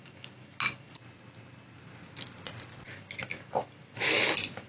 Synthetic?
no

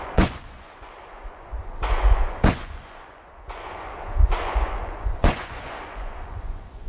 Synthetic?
yes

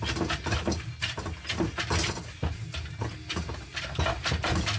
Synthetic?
no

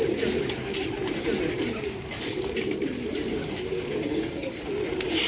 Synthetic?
no